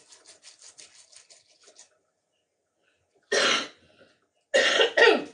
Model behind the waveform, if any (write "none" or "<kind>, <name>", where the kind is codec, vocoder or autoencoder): none